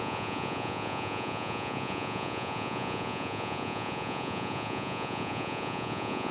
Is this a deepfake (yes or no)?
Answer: yes